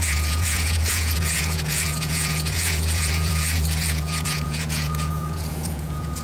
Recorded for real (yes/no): no